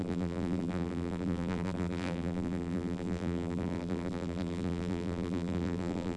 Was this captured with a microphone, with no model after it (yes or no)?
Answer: no